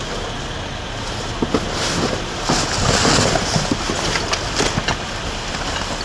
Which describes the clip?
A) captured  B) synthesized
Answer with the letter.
A